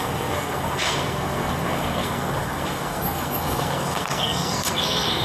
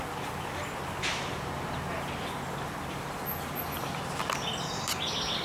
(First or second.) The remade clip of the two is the first